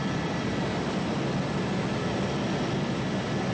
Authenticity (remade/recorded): recorded